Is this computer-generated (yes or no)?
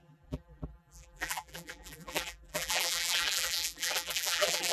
yes